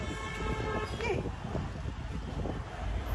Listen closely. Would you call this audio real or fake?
real